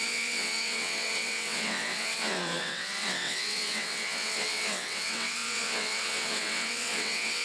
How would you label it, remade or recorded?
remade